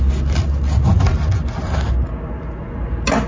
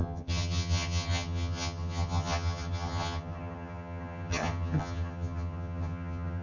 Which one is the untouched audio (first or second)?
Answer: first